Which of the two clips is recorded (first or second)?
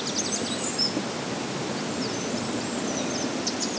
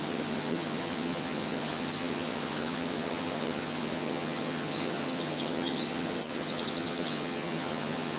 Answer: first